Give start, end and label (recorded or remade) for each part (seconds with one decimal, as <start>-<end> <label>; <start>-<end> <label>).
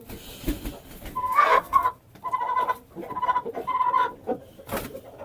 0.0-1.2 recorded; 1.2-1.9 remade; 1.9-5.2 recorded